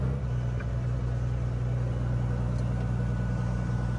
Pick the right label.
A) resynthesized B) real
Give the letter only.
B